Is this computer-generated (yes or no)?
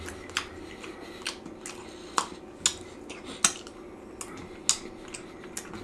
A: no